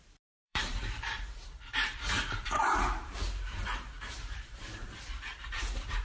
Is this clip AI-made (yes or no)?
yes